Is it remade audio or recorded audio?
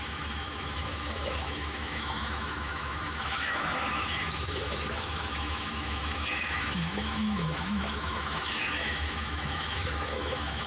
remade